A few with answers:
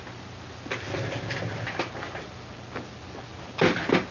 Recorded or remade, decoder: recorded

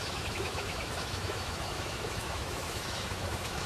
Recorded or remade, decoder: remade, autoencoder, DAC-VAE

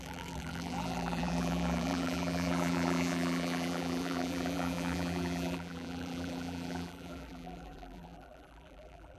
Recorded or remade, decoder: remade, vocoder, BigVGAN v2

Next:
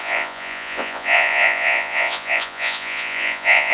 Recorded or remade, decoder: remade, vocoder, Vocos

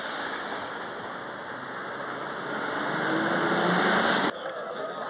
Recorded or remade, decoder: recorded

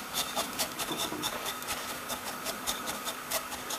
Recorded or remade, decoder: remade, codec, DAC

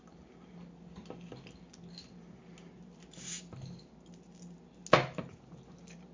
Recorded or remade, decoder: recorded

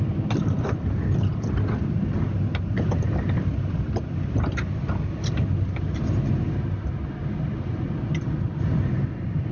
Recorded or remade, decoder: recorded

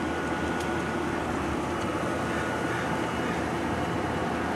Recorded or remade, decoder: recorded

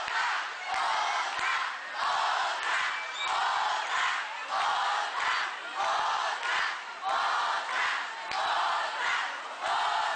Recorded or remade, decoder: recorded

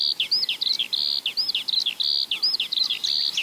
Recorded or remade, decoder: recorded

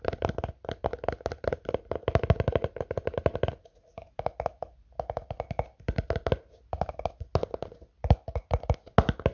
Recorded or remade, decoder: recorded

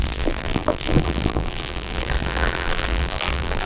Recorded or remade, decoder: remade, vocoder, BigVGAN v2